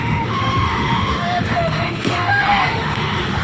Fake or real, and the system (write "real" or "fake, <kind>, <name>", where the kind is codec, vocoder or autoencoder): fake, autoencoder, DAC-VAE